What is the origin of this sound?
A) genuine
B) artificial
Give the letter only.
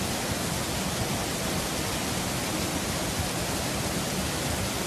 A